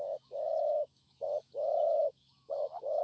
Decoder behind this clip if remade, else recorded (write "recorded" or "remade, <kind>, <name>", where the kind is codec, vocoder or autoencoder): remade, autoencoder, DAC-VAE